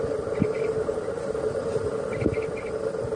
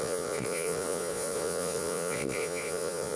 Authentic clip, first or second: first